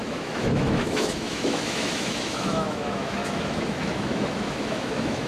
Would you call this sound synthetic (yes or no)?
yes